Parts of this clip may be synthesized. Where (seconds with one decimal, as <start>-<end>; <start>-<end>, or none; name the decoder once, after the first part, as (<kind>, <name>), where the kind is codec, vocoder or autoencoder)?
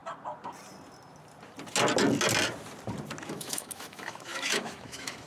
3.2-5.3 (autoencoder, DAC-VAE)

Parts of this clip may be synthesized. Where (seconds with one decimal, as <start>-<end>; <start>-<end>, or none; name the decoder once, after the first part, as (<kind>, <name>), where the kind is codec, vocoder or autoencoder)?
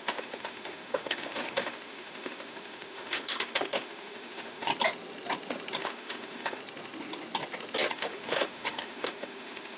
0.0-4.7 (autoencoder, DAC-VAE); 5.8-6.6; 7.9-9.8